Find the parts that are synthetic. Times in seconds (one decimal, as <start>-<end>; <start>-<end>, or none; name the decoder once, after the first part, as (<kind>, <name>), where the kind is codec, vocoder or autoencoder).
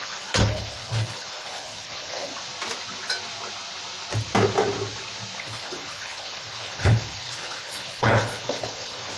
0.0-2.3 (codec, HILCodec); 5.4-9.2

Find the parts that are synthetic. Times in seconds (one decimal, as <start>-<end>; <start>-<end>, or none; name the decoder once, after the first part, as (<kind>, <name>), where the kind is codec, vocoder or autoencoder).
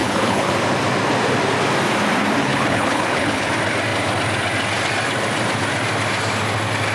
0.0-0.5 (codec, HILCodec); 2.4-3.5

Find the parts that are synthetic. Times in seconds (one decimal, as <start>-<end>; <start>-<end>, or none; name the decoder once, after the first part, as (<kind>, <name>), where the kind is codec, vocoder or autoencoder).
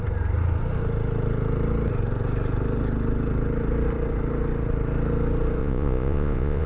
5.6-6.7 (vocoder, Vocos)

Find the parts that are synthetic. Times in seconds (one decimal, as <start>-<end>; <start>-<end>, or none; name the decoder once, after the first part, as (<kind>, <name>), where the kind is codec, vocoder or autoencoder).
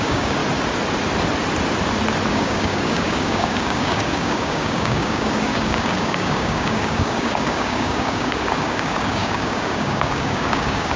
0.0-0.4 (codec, DAC); 2.3-11.0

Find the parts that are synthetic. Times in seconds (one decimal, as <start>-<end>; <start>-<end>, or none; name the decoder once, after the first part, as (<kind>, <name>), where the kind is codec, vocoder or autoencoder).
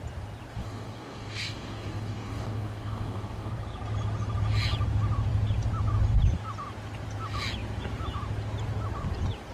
0.6-3.5 (codec, DAC)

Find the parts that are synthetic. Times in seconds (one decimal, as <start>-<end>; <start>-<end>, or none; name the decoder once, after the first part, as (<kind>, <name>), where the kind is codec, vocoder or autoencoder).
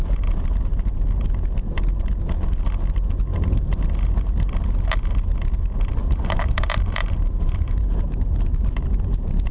6.0-8.6 (vocoder, BigVGAN v2)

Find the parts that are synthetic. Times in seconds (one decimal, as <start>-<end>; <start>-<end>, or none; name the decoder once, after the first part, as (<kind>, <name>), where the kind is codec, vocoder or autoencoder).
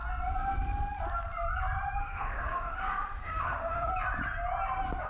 2.0-3.9 (autoencoder, DAC-VAE)